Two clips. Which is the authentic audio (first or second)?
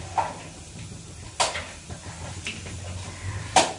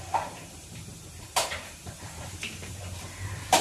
first